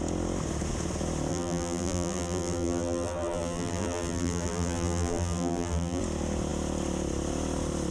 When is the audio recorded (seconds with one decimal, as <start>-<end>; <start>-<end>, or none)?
0.0-1.3; 6.0-7.9